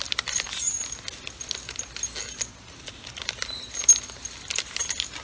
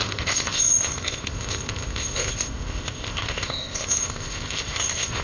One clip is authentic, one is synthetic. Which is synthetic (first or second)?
second